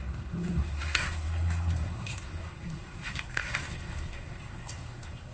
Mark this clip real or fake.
fake